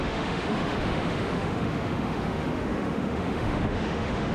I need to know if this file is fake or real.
fake